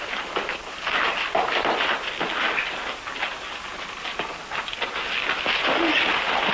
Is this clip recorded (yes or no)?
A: yes